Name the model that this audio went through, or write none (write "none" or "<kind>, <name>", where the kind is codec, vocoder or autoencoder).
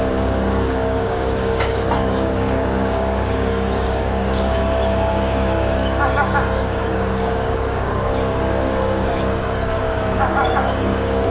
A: codec, DAC